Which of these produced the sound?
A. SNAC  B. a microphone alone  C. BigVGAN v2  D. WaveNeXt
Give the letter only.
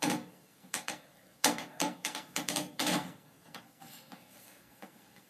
A